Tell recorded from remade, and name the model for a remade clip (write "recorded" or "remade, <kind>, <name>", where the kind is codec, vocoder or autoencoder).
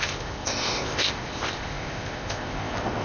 remade, codec, ZipCodec